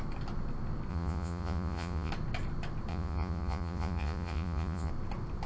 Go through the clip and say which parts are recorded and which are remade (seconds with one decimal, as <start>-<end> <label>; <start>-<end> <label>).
0.0-0.9 recorded; 0.9-2.1 remade; 2.1-2.9 recorded; 2.9-4.9 remade; 4.9-5.5 recorded

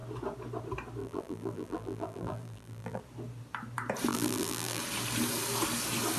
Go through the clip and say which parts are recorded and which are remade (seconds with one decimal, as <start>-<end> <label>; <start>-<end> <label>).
0.0-1.0 recorded; 1.0-3.0 remade; 3.0-4.1 recorded; 4.1-4.8 remade; 4.8-6.2 recorded

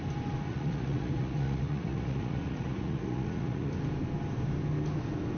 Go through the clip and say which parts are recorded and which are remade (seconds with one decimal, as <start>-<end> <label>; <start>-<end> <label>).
0.0-0.5 recorded; 0.5-3.7 remade; 3.7-5.4 recorded

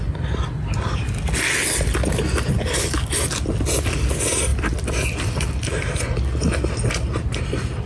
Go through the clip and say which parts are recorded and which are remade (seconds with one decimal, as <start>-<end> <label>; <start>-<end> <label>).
0.0-7.9 recorded

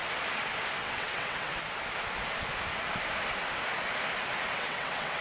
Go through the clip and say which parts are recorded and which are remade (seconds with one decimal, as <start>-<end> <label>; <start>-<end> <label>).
0.0-0.8 recorded; 0.8-1.5 remade; 1.5-4.5 recorded; 4.5-5.2 remade

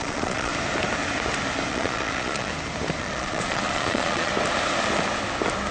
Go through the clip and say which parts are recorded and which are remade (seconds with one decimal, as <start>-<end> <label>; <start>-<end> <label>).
0.0-0.5 remade; 0.5-1.7 recorded; 1.7-2.5 remade; 2.5-3.0 recorded; 3.0-4.3 remade; 4.3-5.7 recorded

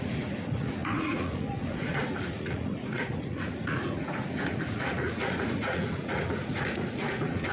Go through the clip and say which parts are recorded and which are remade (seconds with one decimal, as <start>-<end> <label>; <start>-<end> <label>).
0.0-7.5 remade